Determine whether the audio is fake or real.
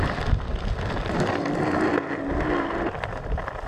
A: real